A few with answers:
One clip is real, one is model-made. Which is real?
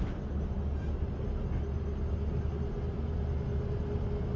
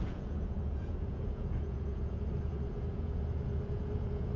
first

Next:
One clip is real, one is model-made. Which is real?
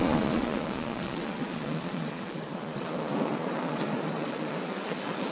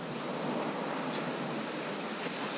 second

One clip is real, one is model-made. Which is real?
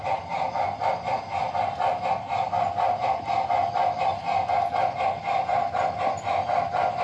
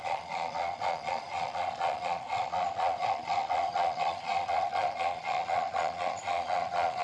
first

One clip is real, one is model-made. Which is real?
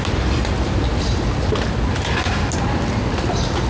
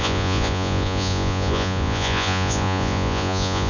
first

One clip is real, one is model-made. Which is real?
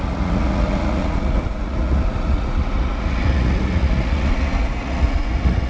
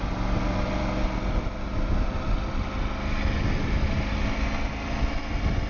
second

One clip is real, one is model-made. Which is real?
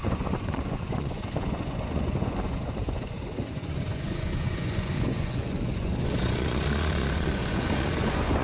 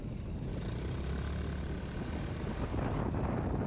second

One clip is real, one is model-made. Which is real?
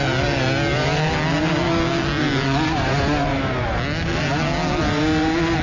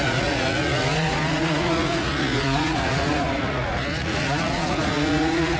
first